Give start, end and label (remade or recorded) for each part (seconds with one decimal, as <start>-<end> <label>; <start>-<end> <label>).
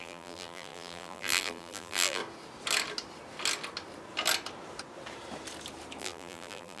0.0-2.2 remade; 2.2-6.0 recorded; 6.0-6.8 remade